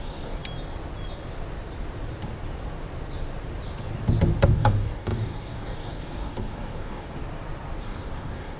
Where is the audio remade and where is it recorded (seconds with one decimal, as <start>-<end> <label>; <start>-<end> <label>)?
0.0-0.4 remade; 0.4-4.4 recorded; 4.4-7.2 remade; 7.2-7.8 recorded; 7.8-8.6 remade